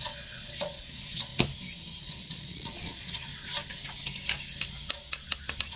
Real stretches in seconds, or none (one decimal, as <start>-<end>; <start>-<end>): 1.3-2.0; 3.3-5.8